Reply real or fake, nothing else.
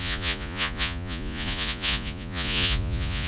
fake